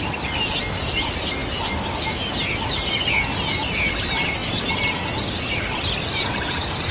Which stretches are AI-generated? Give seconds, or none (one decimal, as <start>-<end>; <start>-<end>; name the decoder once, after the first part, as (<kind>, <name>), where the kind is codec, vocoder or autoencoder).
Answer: none